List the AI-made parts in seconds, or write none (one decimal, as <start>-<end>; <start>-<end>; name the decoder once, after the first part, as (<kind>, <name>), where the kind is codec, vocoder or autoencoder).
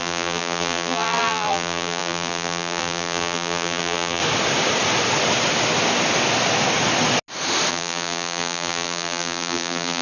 0.0-4.2 (vocoder, BigVGAN v2); 7.7-10.0